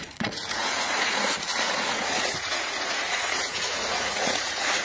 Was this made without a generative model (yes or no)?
no